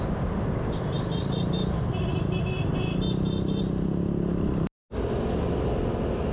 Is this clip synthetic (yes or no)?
no